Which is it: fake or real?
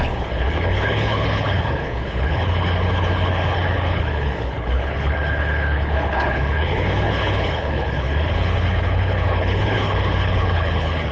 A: fake